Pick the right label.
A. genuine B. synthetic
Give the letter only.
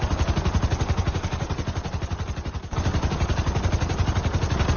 A